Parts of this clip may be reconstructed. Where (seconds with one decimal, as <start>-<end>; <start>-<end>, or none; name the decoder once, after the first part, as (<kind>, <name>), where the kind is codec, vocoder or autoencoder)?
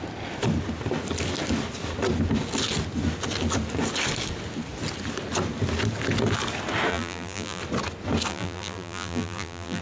6.9-7.6 (vocoder, BigVGAN v2); 8.3-9.8